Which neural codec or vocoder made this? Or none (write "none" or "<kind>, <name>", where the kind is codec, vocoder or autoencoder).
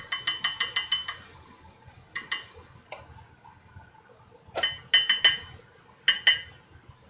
none